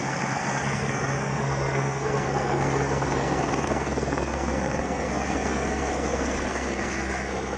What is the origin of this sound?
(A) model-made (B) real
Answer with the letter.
A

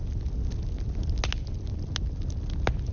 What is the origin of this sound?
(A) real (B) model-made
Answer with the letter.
A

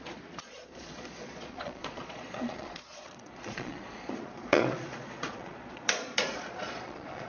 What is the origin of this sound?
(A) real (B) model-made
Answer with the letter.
B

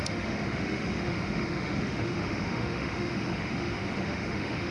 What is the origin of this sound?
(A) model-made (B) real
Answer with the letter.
A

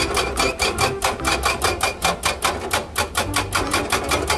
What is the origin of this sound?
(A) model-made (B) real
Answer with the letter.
B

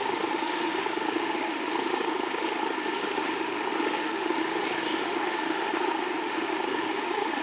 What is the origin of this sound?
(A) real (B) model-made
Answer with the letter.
B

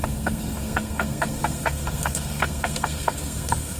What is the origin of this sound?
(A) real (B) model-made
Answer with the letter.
B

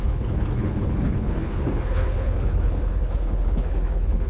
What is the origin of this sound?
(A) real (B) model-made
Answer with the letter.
B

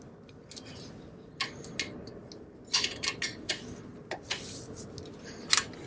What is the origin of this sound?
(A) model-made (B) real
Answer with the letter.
B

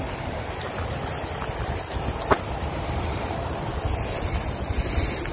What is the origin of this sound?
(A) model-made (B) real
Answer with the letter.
B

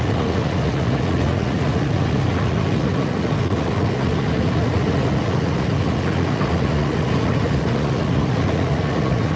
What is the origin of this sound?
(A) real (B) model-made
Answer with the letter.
B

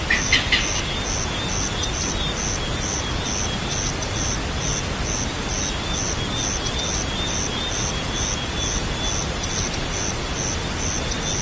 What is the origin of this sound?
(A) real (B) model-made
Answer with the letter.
A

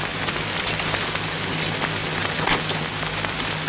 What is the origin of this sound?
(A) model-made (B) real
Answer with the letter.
B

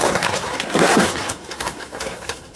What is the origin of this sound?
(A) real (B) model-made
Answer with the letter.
B